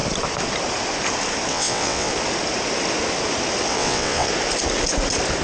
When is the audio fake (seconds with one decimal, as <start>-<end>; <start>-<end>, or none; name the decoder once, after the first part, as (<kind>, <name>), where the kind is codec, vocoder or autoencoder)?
1.5-2.1 (vocoder, WaveNeXt); 3.7-4.3